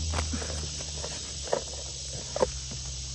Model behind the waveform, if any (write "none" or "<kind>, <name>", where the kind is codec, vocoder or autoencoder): none